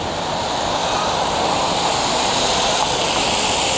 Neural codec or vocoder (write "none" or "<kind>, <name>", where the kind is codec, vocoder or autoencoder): none